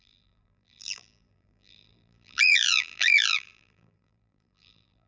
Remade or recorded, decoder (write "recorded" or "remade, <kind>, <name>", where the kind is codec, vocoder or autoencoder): remade, vocoder, BigVGAN v2